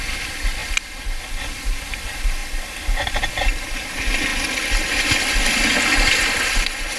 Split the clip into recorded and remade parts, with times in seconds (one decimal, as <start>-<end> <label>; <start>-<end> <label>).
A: 0.0-7.0 recorded